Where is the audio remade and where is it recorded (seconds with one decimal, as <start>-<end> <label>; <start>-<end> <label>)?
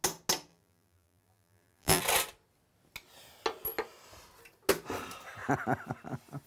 0.0-0.5 recorded; 0.5-2.0 remade; 2.0-6.5 recorded